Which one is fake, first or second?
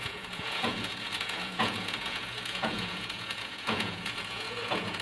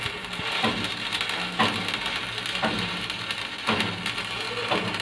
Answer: first